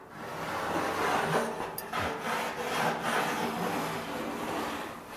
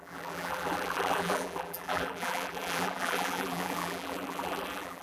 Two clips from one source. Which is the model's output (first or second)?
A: second